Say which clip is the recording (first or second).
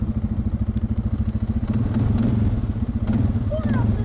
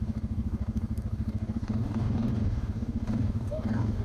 first